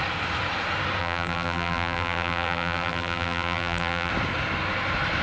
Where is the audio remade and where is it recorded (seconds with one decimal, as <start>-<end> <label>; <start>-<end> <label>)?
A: 0.0-1.0 recorded; 1.0-4.1 remade; 4.1-5.2 recorded